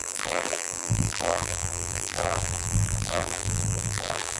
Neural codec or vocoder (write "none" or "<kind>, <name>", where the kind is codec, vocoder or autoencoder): vocoder, BigVGAN v2